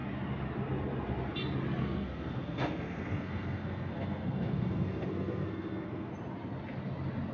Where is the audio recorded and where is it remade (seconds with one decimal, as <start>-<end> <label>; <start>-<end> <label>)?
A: 0.0-1.8 recorded; 1.8-6.1 remade; 6.1-7.3 recorded

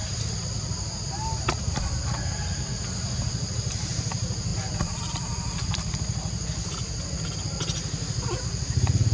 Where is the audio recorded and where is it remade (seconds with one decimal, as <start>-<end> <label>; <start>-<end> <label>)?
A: 0.0-9.1 recorded

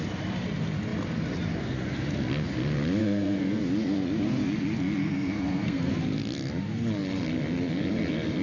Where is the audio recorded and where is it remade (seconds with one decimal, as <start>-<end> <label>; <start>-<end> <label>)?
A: 0.0-3.0 recorded; 3.0-3.6 remade; 3.6-5.0 recorded; 5.0-5.9 remade; 5.9-8.4 recorded

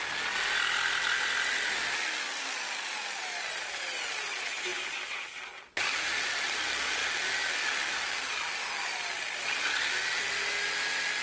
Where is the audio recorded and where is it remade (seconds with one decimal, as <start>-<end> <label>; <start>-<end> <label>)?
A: 0.0-11.2 recorded

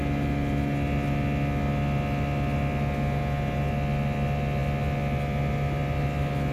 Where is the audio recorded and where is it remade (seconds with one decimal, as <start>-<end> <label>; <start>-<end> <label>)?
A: 0.0-6.5 recorded

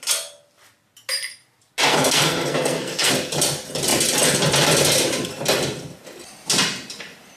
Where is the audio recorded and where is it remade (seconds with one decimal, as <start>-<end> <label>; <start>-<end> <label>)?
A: 0.0-1.9 recorded; 1.9-3.1 remade; 3.1-7.4 recorded

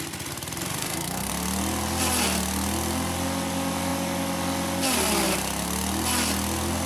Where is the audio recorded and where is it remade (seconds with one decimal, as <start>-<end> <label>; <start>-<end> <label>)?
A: 0.0-0.8 recorded; 0.8-1.3 remade; 1.3-6.9 recorded